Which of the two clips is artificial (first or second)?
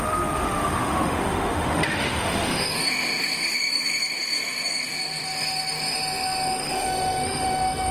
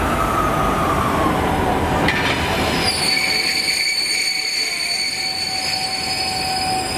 first